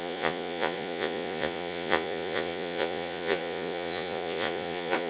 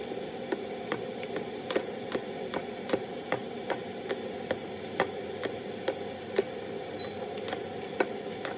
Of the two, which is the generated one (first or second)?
first